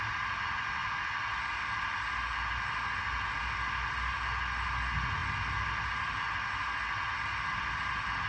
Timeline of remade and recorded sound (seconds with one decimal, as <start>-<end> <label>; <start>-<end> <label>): 0.0-8.3 recorded